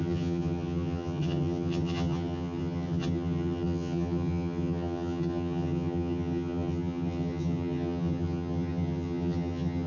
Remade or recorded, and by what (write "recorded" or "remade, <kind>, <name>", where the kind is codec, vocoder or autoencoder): remade, vocoder, HiFi-GAN